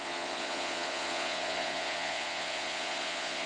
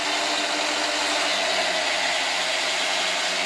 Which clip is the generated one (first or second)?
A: first